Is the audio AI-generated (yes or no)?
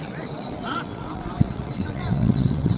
yes